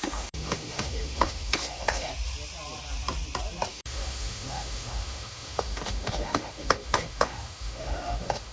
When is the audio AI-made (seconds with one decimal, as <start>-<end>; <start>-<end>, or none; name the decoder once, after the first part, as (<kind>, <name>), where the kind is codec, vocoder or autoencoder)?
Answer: 0.0-2.1 (autoencoder, DAC-VAE); 3.7-8.5